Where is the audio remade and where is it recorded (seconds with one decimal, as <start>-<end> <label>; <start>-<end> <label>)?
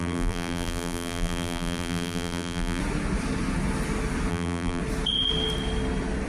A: 0.0-2.8 remade; 2.8-4.3 recorded; 4.3-4.8 remade; 4.8-6.3 recorded